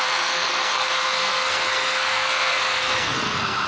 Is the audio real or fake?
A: fake